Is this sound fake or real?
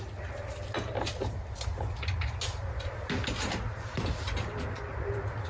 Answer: real